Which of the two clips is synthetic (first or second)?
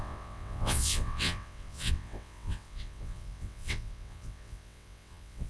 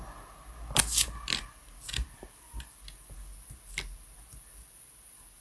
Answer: first